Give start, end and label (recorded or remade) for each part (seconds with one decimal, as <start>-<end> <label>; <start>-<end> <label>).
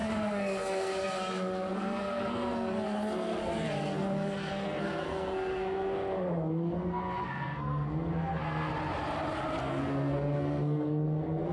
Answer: 0.0-8.7 remade; 8.7-9.6 recorded; 9.6-11.5 remade